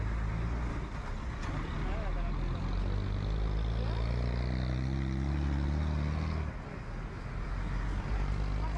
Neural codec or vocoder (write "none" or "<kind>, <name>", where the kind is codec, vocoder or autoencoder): none